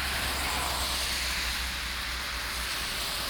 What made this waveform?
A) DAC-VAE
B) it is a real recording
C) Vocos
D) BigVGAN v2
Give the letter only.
B